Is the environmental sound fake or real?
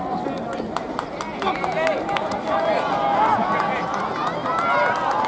real